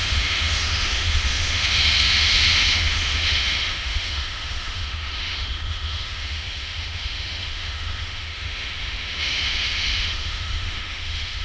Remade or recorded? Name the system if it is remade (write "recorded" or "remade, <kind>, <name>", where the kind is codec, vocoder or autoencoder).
remade, autoencoder, DAC-VAE